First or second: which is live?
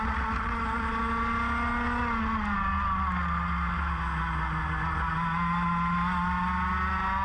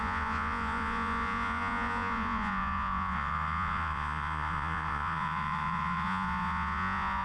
first